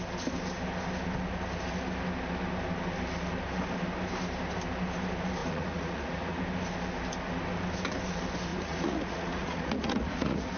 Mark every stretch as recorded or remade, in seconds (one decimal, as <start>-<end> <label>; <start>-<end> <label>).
0.0-5.4 recorded; 5.4-6.4 remade; 6.4-8.5 recorded; 8.5-10.6 remade

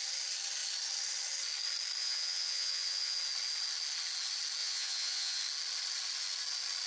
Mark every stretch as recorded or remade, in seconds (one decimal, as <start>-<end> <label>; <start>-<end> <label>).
0.0-2.0 recorded; 2.0-3.2 remade; 3.2-4.6 recorded; 4.6-5.4 remade; 5.4-6.9 recorded